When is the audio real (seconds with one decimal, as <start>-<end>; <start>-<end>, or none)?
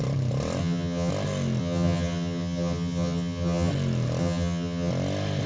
0.0-0.6; 1.1-1.6; 3.7-4.2; 4.9-5.5